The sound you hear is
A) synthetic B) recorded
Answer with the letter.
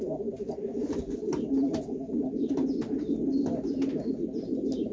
B